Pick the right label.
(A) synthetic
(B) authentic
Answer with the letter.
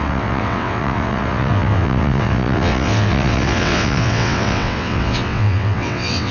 A